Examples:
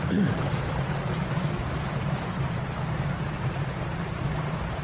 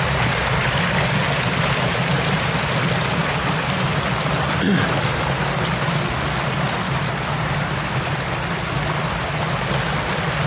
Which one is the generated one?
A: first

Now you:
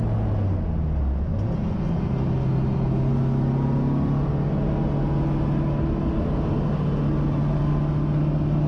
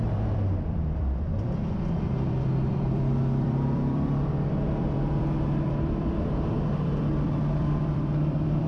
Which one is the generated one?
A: second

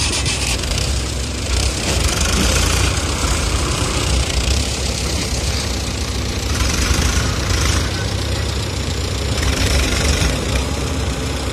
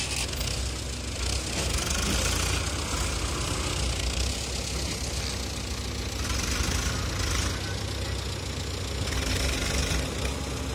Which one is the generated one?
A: first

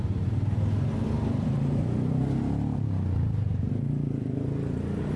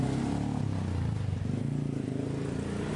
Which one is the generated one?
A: first